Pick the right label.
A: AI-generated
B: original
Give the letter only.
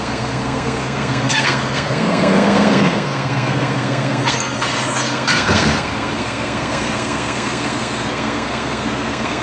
A